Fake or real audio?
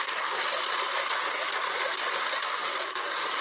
real